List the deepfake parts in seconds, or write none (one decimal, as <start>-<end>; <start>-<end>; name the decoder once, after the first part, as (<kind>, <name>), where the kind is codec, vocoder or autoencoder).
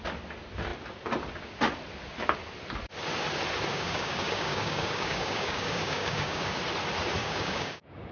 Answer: 3.7-6.6 (codec, DAC); 7.2-8.1